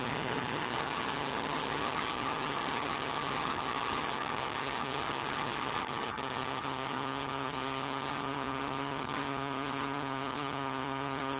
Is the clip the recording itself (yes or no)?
no